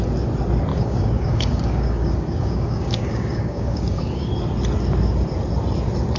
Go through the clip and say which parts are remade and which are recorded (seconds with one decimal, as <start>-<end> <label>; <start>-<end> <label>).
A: 0.0-0.7 recorded; 0.7-4.3 remade; 4.3-6.2 recorded